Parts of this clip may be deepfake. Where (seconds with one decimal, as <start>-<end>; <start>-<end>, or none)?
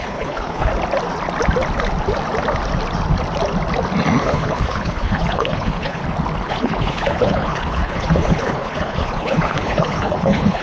0.0-0.7; 4.2-6.0; 6.5-10.6